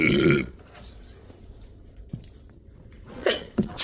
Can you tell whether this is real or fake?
fake